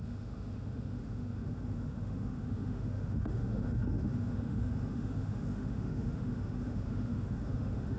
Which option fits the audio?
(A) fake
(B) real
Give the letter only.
A